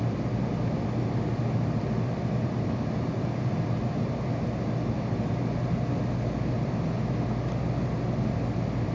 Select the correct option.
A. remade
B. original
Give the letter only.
B